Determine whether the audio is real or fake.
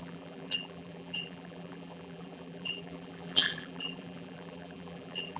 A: fake